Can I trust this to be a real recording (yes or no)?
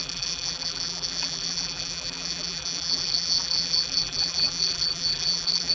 no